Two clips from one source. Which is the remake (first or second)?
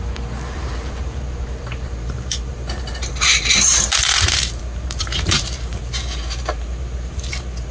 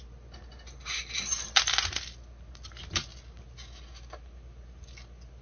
first